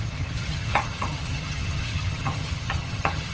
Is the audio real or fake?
fake